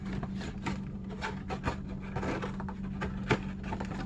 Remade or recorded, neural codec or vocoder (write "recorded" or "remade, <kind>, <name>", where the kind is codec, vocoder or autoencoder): recorded